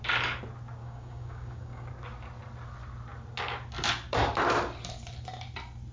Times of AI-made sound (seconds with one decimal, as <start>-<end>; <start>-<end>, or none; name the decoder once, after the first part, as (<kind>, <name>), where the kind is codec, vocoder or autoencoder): 0.8-1.9 (codec, DAC)